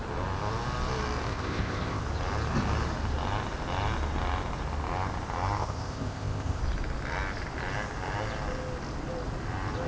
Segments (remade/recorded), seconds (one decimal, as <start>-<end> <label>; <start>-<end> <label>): 0.0-1.3 recorded; 1.3-2.0 remade; 2.0-5.6 recorded; 5.6-6.6 remade; 6.6-9.9 recorded